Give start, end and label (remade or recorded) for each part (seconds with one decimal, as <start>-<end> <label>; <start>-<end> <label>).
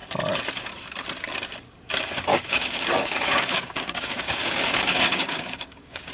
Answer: 0.0-2.3 recorded; 2.3-6.1 remade